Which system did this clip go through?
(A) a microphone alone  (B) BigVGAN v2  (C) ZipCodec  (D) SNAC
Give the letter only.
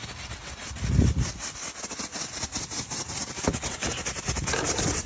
A